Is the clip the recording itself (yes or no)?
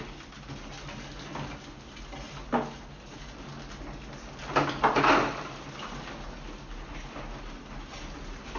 yes